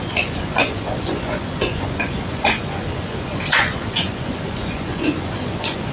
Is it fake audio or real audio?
fake